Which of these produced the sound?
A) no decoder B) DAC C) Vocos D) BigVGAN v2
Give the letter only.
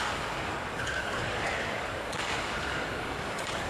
B